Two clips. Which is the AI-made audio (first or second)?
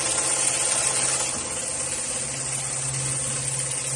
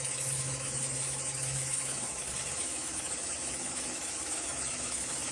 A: second